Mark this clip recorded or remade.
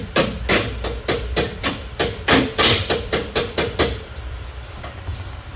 recorded